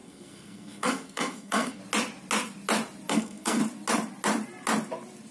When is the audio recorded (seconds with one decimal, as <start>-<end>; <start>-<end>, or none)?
1.8-3.1; 3.6-5.3